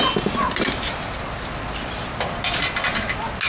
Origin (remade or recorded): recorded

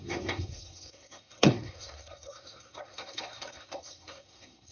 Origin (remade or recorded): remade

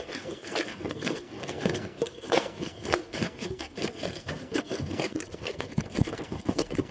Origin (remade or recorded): remade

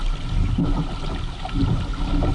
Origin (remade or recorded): recorded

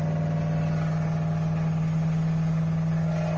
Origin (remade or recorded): recorded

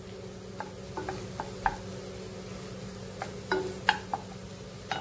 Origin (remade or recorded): recorded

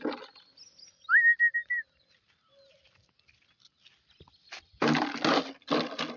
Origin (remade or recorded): recorded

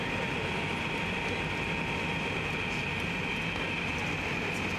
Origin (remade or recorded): recorded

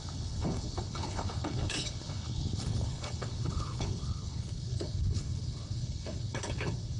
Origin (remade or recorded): remade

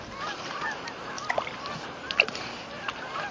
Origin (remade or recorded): remade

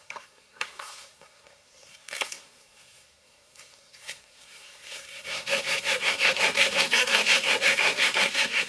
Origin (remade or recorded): remade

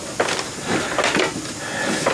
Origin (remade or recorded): recorded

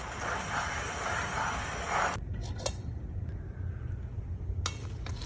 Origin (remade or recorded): recorded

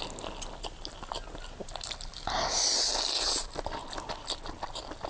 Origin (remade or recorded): recorded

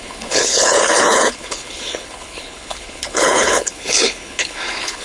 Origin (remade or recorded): remade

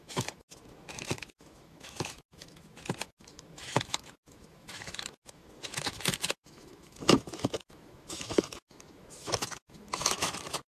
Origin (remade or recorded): remade